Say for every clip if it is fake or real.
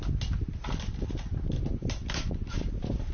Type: real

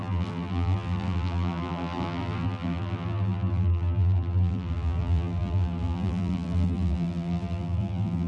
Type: fake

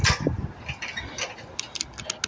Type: real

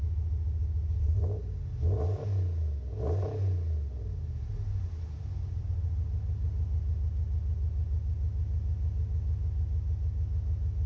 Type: real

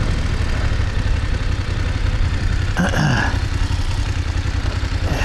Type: fake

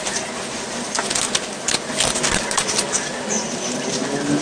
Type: real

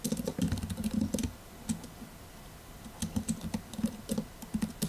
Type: real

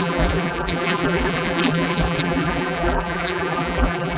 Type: fake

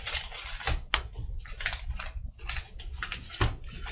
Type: real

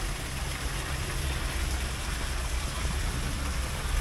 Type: fake